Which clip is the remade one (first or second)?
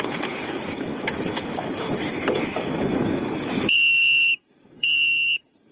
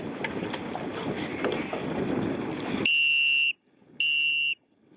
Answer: first